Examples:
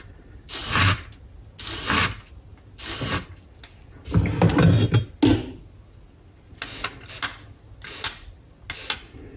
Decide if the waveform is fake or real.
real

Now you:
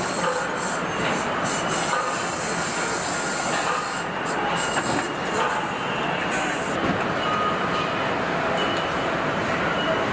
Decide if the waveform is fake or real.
real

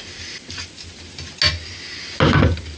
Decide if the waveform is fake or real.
real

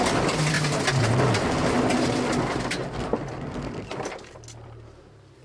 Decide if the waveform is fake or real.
real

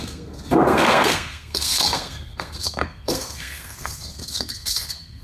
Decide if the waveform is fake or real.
fake